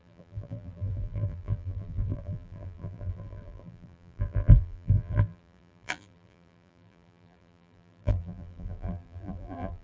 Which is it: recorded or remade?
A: remade